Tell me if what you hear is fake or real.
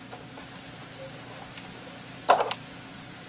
real